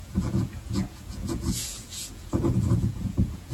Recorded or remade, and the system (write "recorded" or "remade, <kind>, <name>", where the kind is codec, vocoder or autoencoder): remade, vocoder, Vocos